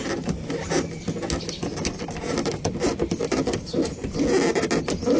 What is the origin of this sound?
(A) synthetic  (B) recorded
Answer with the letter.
B